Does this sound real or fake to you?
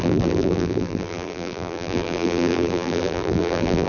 fake